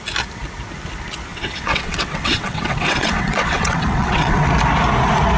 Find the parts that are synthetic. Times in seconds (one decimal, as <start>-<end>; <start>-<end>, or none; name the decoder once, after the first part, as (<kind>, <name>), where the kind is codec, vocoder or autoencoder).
1.3-4.5 (vocoder, WaveNeXt)